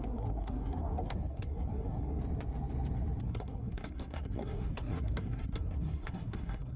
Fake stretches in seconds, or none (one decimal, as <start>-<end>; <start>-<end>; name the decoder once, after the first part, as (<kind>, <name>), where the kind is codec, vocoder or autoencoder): 0.0-2.2 (codec, SNAC); 3.2-6.8